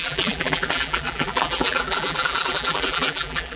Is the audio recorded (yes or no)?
no